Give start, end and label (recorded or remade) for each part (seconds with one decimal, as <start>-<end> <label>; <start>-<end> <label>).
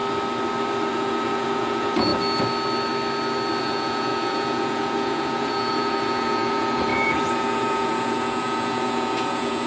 0.0-0.9 recorded; 0.9-2.1 remade; 2.1-3.6 recorded; 3.6-9.7 remade